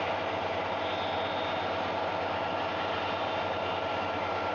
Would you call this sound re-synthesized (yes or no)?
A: no